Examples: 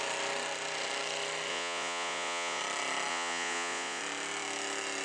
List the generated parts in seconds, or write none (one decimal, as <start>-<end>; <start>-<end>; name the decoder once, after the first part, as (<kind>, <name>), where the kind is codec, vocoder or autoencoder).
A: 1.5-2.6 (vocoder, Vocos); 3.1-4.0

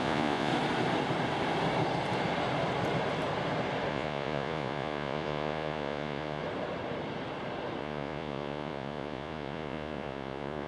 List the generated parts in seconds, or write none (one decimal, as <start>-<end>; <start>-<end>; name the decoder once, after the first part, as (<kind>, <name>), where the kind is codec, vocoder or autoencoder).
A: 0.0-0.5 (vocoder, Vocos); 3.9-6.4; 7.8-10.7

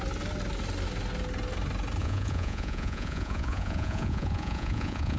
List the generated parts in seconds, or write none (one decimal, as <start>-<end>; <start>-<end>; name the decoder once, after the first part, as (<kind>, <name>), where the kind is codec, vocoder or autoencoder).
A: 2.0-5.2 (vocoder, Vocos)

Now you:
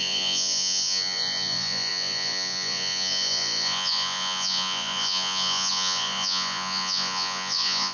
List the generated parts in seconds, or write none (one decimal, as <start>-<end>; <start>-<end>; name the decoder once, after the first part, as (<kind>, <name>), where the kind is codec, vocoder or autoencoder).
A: 0.0-7.9 (vocoder, Vocos)

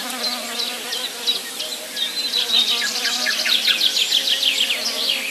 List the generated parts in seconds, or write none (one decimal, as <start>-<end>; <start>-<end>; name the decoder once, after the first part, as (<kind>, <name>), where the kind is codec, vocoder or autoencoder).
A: none

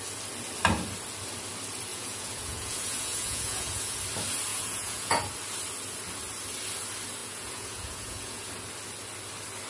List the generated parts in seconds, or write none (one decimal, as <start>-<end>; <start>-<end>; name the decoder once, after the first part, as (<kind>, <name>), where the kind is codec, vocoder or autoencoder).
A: 1.9-4.0 (vocoder, Vocos); 4.5-5.2; 7.2-8.5

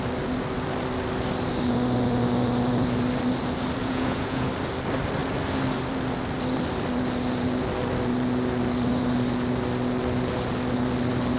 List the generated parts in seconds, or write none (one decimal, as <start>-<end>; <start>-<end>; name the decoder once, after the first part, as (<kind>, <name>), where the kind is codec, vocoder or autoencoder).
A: 3.8-4.5 (vocoder, Vocos)